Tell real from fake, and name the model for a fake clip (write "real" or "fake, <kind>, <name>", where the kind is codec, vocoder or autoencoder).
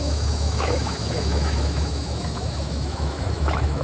fake, autoencoder, DAC-VAE